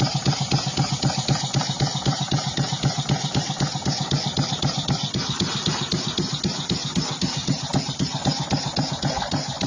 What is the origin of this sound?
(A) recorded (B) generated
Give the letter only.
A